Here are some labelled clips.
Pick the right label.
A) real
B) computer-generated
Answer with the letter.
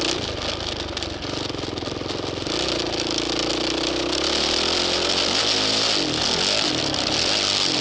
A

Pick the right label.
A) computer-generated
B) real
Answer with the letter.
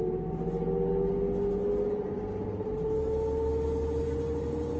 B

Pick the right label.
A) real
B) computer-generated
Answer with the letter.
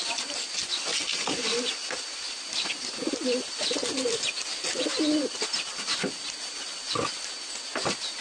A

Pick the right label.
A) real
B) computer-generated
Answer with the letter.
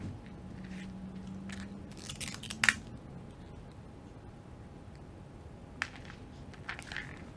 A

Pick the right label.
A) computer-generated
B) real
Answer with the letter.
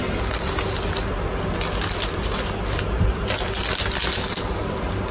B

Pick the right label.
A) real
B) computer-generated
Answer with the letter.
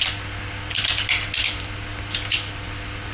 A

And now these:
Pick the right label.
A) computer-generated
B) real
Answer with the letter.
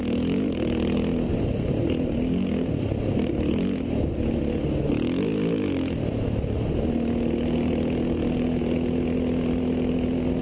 B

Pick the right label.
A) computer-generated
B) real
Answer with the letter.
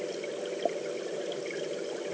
B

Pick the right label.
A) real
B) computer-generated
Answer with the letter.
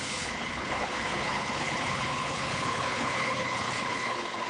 B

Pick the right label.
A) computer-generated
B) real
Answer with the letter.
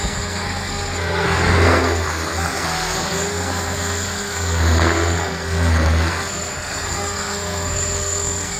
A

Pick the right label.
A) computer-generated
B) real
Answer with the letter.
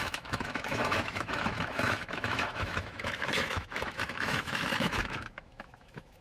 A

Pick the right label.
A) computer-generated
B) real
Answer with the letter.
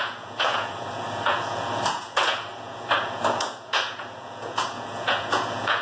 A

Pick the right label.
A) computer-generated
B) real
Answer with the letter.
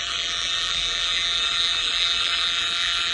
A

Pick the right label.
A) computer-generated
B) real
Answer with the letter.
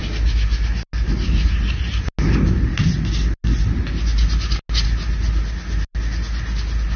B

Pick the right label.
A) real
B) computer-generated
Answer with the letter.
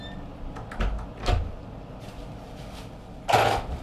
A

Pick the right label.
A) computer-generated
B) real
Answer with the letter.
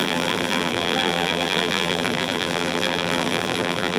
A